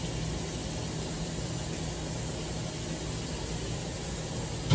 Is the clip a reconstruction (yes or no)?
no